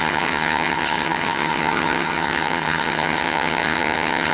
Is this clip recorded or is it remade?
remade